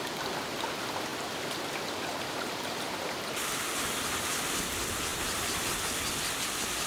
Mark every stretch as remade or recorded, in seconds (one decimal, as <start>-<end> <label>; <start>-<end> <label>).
0.0-1.1 recorded; 1.1-2.7 remade; 2.7-5.1 recorded; 5.1-5.7 remade; 5.7-6.9 recorded